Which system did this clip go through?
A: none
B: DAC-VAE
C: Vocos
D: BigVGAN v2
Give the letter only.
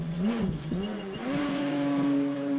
C